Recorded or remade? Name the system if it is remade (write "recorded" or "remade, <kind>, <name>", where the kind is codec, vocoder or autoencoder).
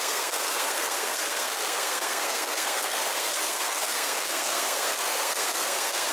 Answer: remade, codec, SNAC